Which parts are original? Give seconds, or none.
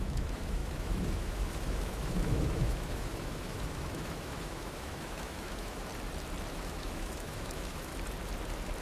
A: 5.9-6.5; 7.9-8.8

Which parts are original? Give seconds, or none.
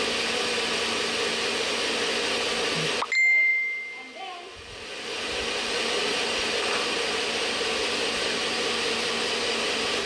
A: 0.0-10.1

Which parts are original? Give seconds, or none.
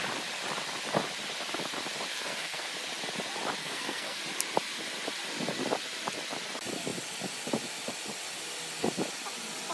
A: 0.0-2.1; 2.7-3.6; 4.2-9.7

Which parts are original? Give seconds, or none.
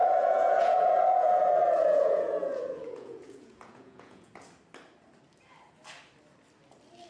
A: 4.3-7.1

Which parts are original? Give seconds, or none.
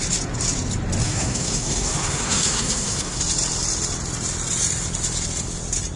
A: 0.0-1.0; 3.2-6.0